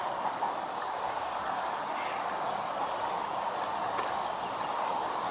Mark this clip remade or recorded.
recorded